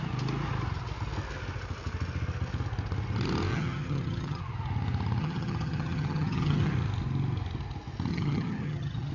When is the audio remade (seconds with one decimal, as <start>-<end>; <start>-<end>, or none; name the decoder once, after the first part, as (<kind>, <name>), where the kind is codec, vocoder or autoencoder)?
3.5-4.4 (vocoder, HiFi-GAN); 5.2-6.7; 8.1-9.1